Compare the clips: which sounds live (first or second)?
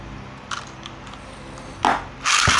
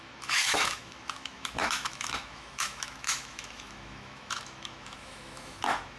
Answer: first